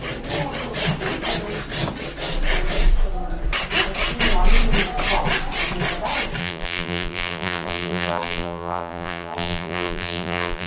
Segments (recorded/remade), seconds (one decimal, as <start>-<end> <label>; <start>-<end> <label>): 0.0-6.4 recorded; 6.4-10.7 remade

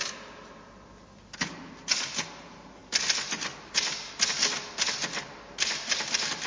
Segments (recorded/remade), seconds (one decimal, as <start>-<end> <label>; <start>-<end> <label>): 0.0-6.5 recorded